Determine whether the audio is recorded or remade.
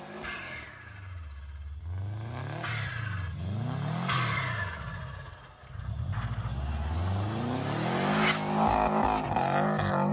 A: recorded